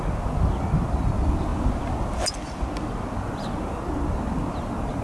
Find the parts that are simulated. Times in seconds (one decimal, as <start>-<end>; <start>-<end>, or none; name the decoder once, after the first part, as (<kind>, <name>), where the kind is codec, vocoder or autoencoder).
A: none